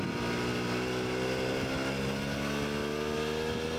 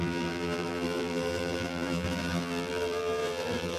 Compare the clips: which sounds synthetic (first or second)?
second